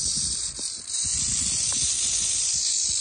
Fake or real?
real